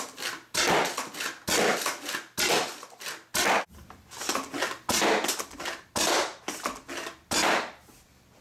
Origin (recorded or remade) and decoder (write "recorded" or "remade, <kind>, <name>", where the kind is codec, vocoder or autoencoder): recorded